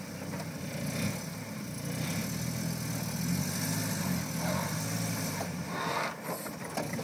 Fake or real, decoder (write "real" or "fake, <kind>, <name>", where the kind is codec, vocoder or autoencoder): real